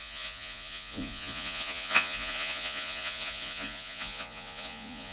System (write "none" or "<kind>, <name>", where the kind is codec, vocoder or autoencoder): vocoder, Vocos